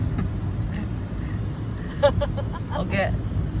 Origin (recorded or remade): recorded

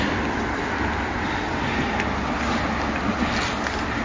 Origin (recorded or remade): recorded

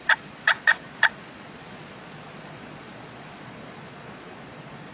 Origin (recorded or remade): remade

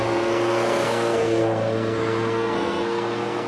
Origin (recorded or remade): remade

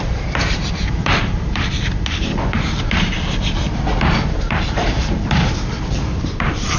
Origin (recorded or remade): remade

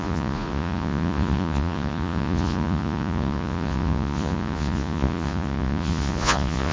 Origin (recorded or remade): remade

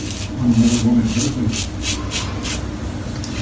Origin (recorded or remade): recorded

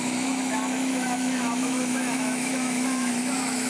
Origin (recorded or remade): remade